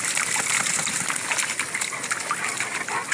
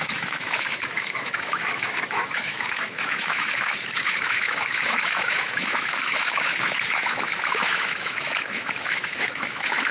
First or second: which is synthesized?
second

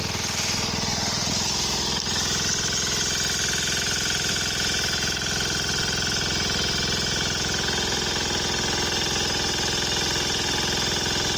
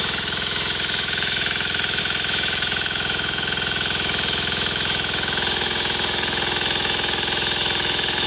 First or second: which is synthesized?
second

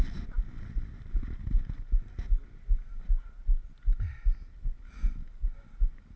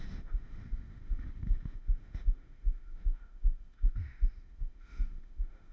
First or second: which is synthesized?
second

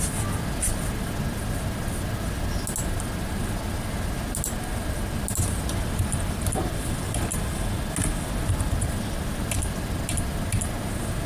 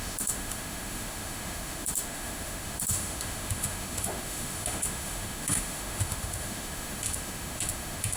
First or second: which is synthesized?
second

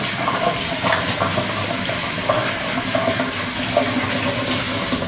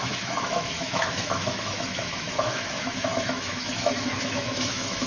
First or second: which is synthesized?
second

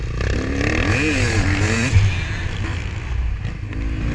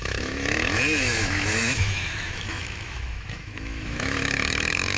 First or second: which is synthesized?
second